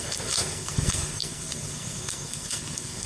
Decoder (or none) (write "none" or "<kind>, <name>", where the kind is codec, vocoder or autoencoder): codec, SNAC